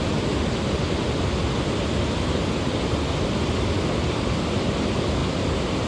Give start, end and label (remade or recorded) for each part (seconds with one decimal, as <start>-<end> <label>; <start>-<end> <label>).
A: 0.0-5.9 recorded

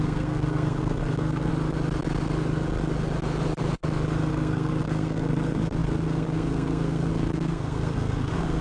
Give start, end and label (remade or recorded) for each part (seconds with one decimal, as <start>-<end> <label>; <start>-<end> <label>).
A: 0.0-1.5 remade; 1.5-4.3 recorded; 4.3-8.6 remade

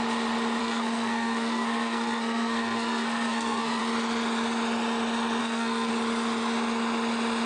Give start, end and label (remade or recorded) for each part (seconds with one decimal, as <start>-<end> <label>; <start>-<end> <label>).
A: 0.0-0.6 recorded; 0.6-3.8 remade; 3.8-5.4 recorded; 5.4-5.9 remade; 5.9-7.5 recorded

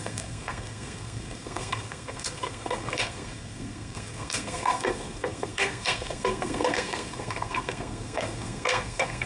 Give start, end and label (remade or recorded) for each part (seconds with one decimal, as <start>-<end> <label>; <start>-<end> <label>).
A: 0.0-9.3 remade

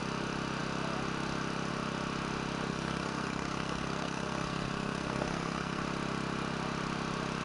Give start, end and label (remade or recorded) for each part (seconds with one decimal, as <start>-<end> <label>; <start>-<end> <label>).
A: 0.0-2.7 recorded; 2.7-5.8 remade; 5.8-7.4 recorded

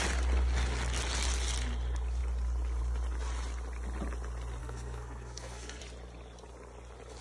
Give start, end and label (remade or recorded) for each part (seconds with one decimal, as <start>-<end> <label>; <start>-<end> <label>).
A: 0.0-4.6 recorded; 4.6-5.8 remade; 5.8-7.2 recorded